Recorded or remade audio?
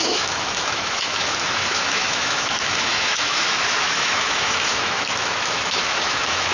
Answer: remade